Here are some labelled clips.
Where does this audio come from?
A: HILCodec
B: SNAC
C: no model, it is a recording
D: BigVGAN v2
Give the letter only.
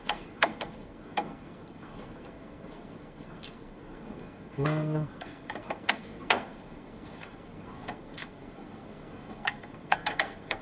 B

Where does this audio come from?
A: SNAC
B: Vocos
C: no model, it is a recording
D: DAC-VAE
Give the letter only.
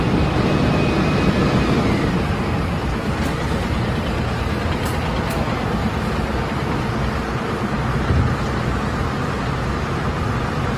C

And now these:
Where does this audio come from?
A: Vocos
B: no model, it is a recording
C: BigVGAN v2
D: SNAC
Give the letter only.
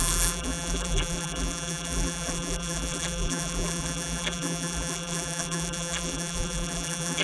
C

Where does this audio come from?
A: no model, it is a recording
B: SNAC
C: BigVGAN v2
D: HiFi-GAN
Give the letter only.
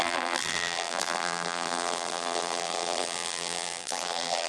C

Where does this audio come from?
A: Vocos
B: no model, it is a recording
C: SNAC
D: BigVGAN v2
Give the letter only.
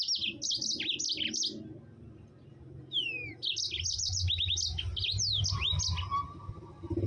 B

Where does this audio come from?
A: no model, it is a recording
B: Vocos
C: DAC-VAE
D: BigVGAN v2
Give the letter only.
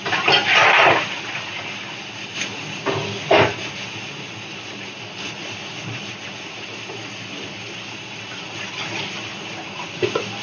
A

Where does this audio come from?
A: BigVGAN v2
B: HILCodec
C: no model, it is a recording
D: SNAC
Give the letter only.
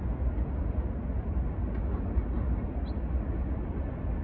C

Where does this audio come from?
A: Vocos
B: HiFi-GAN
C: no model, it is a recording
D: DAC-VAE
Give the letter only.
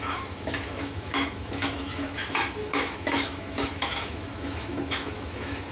D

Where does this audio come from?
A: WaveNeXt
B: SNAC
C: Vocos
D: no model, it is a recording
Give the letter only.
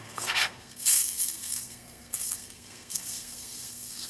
B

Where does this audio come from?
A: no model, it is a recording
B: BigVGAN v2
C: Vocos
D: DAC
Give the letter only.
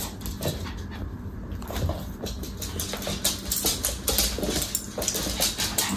A